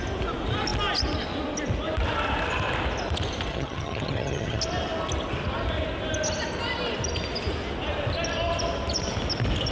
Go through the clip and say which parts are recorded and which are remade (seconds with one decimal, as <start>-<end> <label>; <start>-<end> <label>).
0.0-3.5 recorded; 3.5-4.6 remade; 4.6-9.7 recorded